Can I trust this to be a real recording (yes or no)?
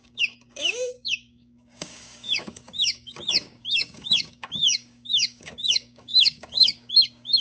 no